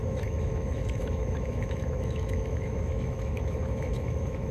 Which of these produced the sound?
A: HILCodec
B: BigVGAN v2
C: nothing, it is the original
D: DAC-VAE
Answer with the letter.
D